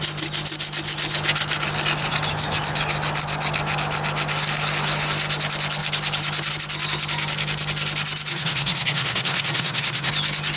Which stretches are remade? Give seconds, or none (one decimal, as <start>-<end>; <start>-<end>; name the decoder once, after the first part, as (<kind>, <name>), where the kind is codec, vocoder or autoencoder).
8.3-10.1 (codec, SNAC)